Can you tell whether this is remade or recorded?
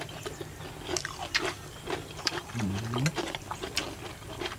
recorded